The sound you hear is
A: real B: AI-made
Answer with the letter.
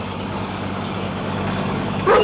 B